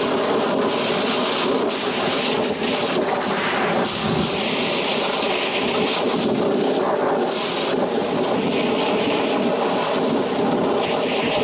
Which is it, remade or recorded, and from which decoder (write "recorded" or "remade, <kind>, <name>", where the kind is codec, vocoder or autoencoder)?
recorded